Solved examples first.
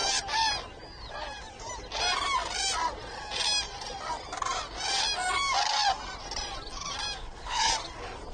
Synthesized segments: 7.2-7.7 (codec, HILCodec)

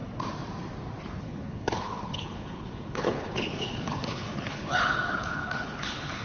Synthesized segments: 1.2-6.2 (codec, HILCodec)